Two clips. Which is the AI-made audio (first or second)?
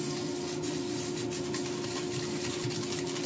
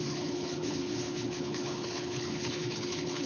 second